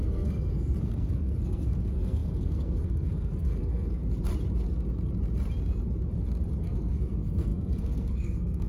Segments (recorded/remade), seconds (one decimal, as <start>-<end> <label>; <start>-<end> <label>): 0.0-4.0 remade; 4.0-6.6 recorded; 6.6-8.7 remade

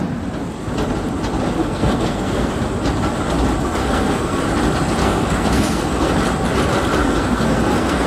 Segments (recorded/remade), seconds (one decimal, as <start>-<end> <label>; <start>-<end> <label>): 0.0-1.6 recorded; 1.6-2.5 remade; 2.5-3.8 recorded; 3.8-4.4 remade; 4.4-5.0 recorded; 5.0-6.1 remade; 6.1-7.0 recorded; 7.0-8.1 remade

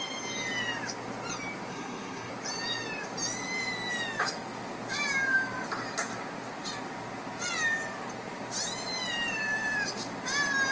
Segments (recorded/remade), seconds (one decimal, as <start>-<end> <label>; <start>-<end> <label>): 0.0-1.7 recorded; 1.7-2.3 remade; 2.3-10.7 recorded

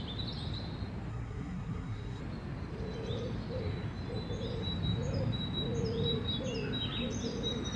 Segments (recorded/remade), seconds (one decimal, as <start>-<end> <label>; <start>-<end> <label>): 0.0-1.1 recorded; 1.1-2.2 remade; 2.2-7.8 recorded

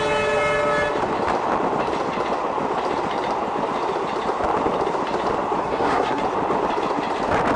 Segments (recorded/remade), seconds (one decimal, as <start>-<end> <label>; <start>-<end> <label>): 0.0-5.6 recorded; 5.6-6.2 remade; 6.2-7.6 recorded

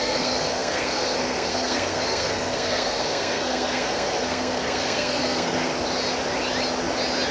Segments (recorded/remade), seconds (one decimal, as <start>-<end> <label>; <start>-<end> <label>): 0.0-5.7 remade; 5.7-7.3 recorded

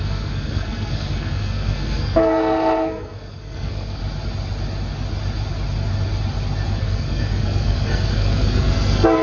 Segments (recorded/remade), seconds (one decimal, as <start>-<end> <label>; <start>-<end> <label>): 0.0-4.0 remade; 4.0-6.8 recorded; 6.8-9.2 remade